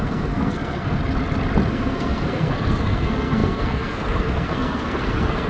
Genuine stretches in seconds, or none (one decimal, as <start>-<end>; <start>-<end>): 1.0-1.7

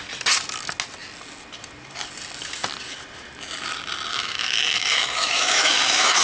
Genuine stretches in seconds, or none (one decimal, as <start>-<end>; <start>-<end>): 0.0-4.1